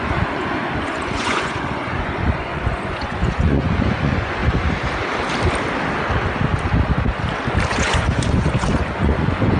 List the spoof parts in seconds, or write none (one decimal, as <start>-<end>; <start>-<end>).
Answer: 0.0-4.4; 7.7-9.6